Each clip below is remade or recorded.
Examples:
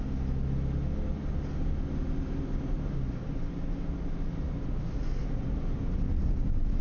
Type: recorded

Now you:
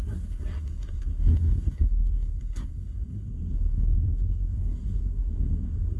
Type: remade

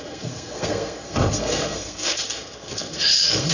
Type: remade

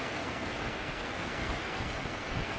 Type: remade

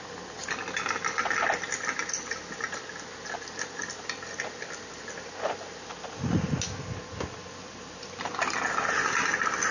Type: recorded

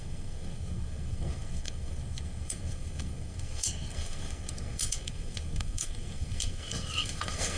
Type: remade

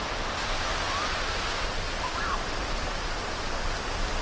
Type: recorded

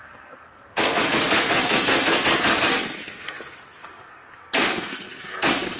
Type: remade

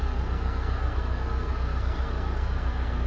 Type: remade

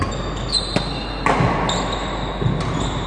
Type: recorded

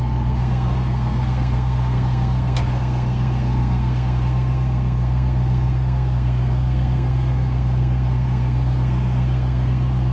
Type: remade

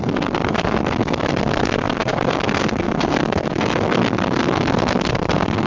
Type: remade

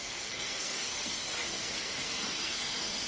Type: remade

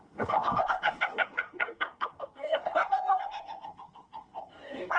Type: remade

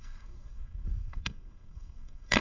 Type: remade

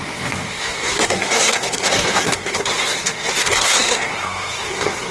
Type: remade